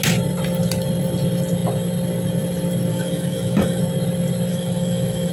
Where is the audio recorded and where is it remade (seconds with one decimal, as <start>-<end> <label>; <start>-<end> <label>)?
0.0-2.9 recorded; 2.9-3.8 remade; 3.8-4.5 recorded; 4.5-5.3 remade